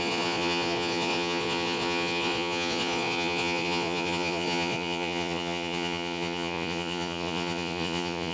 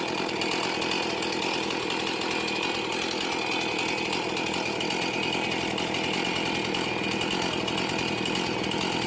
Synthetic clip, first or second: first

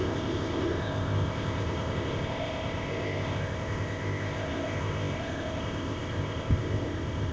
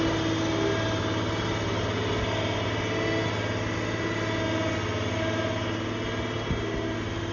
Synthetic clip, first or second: first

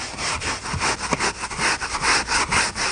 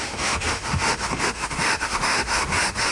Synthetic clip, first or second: second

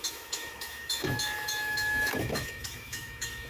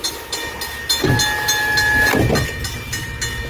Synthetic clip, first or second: first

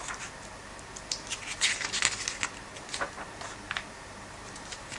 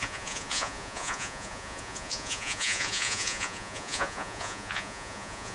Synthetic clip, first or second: second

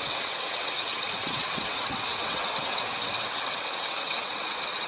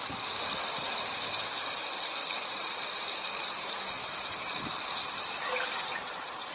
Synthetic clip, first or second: first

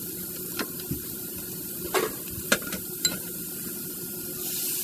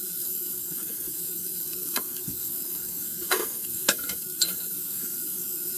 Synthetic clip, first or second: second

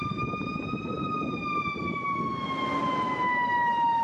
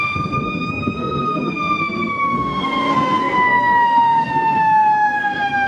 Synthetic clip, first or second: second